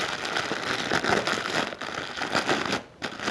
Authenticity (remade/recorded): recorded